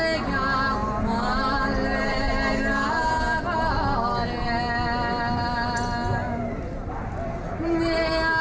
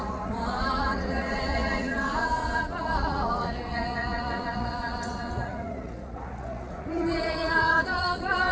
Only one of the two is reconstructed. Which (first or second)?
second